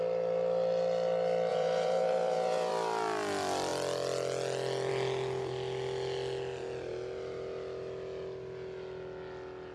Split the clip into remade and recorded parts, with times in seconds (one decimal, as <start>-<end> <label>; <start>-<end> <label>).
0.0-1.5 recorded; 1.5-2.7 remade; 2.7-9.7 recorded